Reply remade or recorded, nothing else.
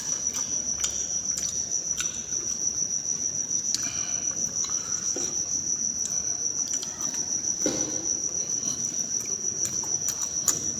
recorded